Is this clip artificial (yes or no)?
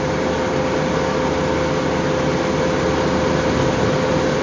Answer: no